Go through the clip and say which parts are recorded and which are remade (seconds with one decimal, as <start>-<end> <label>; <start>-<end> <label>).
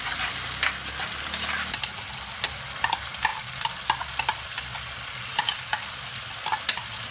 0.0-7.1 recorded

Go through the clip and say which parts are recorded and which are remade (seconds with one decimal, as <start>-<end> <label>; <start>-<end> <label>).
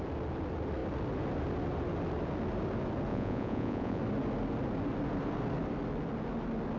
0.0-3.1 recorded; 3.1-4.0 remade; 4.0-6.8 recorded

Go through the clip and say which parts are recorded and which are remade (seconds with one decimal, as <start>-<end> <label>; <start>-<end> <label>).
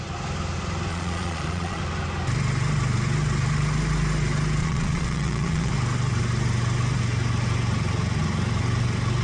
0.0-0.9 recorded; 0.9-1.8 remade; 1.8-4.6 recorded; 4.6-5.7 remade; 5.7-9.2 recorded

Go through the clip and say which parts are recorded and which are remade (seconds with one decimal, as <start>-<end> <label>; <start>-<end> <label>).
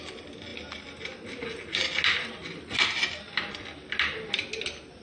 0.0-5.0 recorded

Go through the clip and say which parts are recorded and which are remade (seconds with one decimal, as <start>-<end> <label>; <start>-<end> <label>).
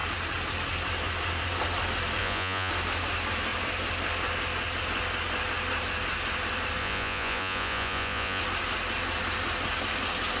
0.0-2.2 recorded; 2.2-2.7 remade; 2.7-6.8 recorded; 6.8-8.4 remade; 8.4-10.4 recorded